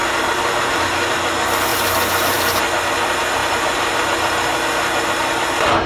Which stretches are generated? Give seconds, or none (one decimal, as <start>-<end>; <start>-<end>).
1.7-2.6; 3.4-4.4